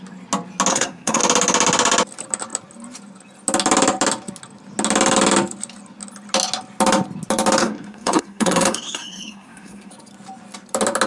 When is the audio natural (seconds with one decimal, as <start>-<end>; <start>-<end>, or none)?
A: 0.0-0.7; 1.2-7.6; 9.9-11.1